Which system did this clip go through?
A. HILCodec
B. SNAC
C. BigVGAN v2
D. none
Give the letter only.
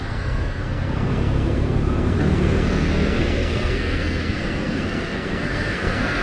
B